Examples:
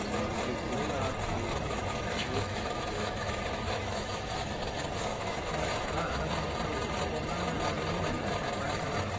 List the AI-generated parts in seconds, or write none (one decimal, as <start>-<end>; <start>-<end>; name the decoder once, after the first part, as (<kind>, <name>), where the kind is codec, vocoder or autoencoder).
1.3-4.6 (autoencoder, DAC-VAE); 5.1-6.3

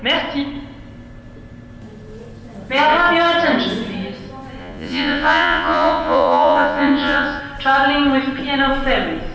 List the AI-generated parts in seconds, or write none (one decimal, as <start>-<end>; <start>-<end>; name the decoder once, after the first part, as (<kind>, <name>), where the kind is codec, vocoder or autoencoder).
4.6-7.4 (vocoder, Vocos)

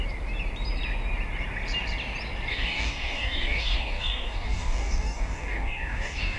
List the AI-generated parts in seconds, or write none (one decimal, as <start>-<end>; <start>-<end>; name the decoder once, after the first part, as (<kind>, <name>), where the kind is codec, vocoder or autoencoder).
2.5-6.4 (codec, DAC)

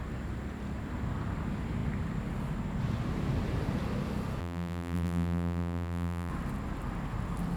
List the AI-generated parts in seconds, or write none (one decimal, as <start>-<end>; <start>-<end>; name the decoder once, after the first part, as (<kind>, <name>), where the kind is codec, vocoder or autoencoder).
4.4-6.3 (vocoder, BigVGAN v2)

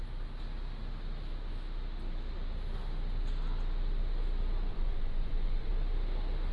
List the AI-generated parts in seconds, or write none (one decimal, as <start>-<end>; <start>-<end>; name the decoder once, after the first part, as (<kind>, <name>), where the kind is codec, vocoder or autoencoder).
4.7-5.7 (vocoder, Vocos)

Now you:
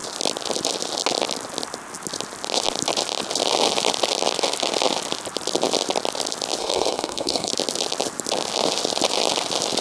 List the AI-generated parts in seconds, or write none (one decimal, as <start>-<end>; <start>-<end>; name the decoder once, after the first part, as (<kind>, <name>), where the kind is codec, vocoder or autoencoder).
6.6-7.5 (codec, SNAC)